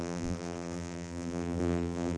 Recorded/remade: remade